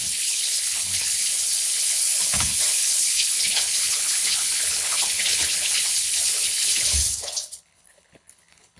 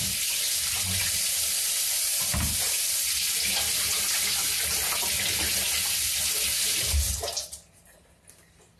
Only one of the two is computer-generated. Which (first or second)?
first